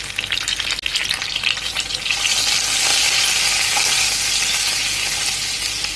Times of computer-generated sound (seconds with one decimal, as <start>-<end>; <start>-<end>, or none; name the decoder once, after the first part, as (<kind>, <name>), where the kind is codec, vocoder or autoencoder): none